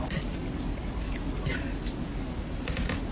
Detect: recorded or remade recorded